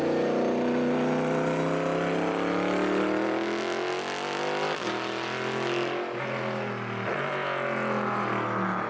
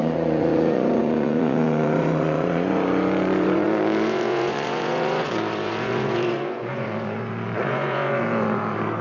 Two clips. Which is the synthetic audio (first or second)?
second